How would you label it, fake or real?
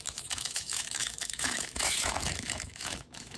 fake